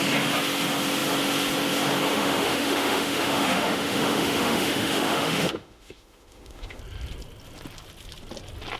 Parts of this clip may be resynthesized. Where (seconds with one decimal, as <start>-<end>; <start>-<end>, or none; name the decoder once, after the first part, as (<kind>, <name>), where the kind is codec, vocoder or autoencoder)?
2.1-6.8 (autoencoder, DAC-VAE)